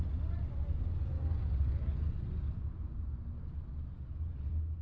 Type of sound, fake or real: real